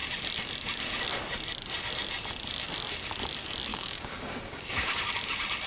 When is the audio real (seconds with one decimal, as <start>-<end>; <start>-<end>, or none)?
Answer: 0.0-3.7; 5.1-5.7